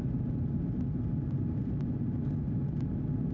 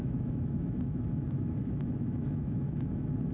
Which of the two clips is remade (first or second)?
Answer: second